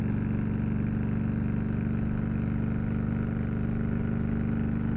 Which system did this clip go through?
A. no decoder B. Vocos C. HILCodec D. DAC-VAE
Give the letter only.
A